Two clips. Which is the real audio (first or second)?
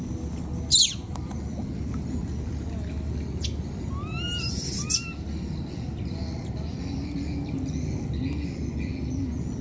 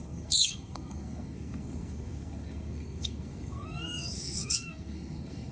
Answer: first